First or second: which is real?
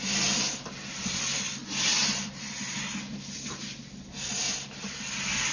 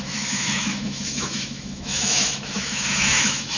first